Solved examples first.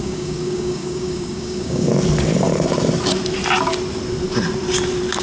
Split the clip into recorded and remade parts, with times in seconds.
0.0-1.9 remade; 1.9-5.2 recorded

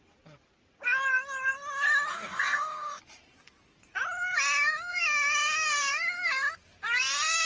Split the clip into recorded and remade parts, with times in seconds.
0.0-2.1 recorded; 2.1-3.0 remade; 3.0-7.5 recorded

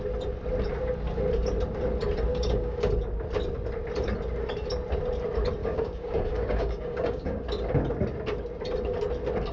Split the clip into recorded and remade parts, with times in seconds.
0.0-2.3 recorded; 2.3-2.9 remade; 2.9-5.6 recorded; 5.6-7.4 remade; 7.4-9.5 recorded